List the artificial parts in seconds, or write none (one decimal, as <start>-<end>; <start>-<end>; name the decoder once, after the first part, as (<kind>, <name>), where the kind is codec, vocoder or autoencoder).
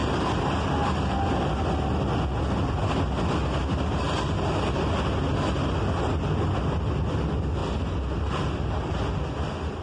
none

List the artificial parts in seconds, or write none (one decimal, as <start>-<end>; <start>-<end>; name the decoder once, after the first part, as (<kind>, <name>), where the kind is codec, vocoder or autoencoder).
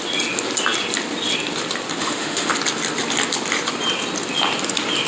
2.0-2.5 (autoencoder, DAC-VAE)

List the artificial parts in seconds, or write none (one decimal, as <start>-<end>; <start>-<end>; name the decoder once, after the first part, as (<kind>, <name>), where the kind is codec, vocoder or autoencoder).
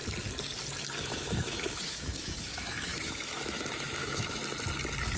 1.0-4.4 (autoencoder, DAC-VAE)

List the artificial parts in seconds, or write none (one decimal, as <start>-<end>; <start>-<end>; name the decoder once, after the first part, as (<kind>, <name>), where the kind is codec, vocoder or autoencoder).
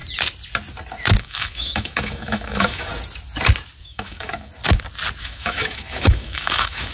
1.2-2.9 (autoencoder, DAC-VAE); 3.8-4.5; 5.2-6.9